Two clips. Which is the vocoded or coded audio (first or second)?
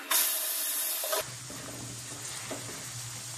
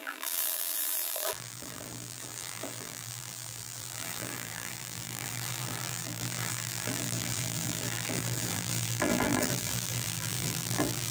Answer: second